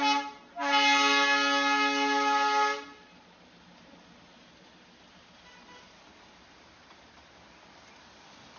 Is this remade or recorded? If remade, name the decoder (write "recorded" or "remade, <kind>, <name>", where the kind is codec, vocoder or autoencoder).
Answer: recorded